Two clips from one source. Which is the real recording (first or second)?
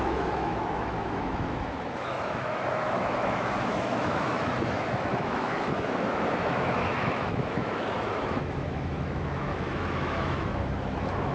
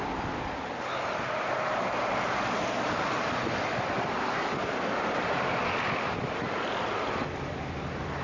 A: second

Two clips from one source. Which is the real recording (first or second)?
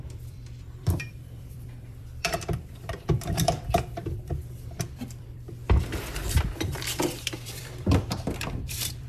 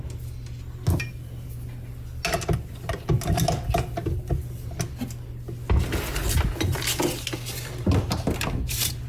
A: second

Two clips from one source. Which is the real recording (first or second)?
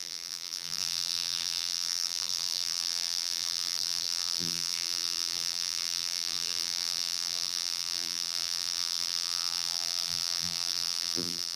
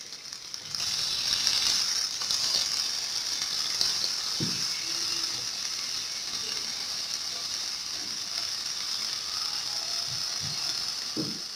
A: second